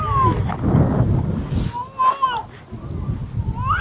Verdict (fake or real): real